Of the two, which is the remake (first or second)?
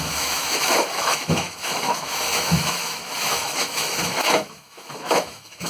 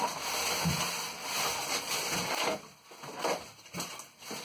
first